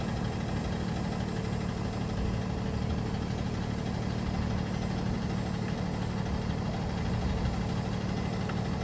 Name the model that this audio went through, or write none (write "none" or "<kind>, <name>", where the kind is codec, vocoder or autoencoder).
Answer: none